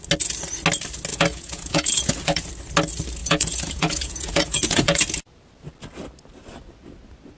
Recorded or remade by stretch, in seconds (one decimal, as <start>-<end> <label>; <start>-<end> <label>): 0.0-1.1 recorded; 1.1-2.5 remade; 2.5-3.2 recorded; 3.2-5.0 remade; 5.0-7.4 recorded